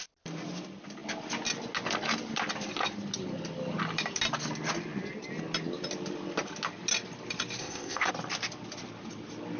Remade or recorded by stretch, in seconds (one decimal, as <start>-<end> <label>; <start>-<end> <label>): 0.0-7.6 recorded; 7.6-8.1 remade; 8.1-9.6 recorded